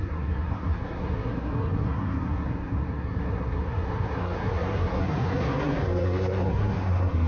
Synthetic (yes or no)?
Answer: yes